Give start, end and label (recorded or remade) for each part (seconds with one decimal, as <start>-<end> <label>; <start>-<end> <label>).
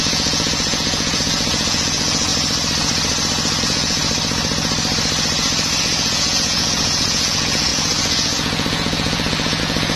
0.0-2.3 remade; 2.3-3.6 recorded; 3.6-4.0 remade; 4.0-5.8 recorded; 5.8-10.0 remade